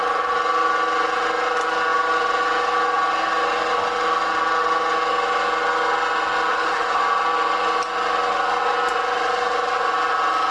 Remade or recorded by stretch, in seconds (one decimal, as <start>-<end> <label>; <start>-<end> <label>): 0.0-6.5 recorded; 6.5-7.0 remade; 7.0-10.5 recorded